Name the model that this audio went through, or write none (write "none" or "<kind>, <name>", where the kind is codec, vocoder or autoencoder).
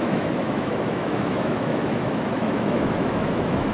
autoencoder, DAC-VAE